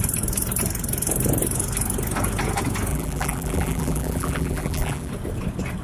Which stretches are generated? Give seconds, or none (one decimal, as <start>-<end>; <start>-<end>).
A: 2.9-5.1